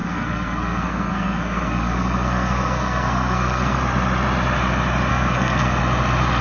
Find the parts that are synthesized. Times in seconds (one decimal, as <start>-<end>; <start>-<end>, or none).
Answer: 0.0-3.8; 5.1-5.8